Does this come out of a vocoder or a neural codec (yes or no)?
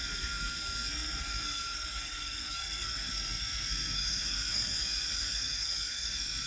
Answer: yes